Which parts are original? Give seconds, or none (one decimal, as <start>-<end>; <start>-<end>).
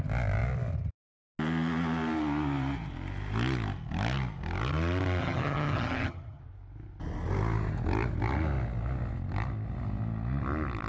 0.0-5.2; 6.4-10.9